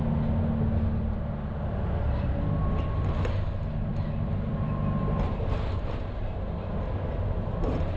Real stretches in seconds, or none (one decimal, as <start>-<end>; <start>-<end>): 0.0-8.0